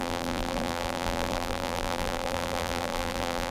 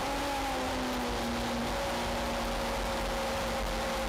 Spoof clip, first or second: first